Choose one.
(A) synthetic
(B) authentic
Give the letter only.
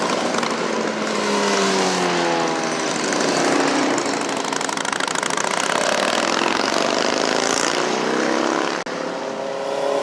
B